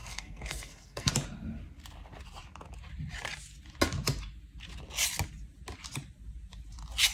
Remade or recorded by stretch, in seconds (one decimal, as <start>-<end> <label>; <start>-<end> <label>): 0.0-1.1 remade; 1.1-7.1 recorded